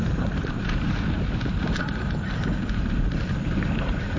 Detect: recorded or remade remade